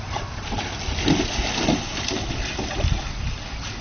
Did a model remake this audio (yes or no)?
no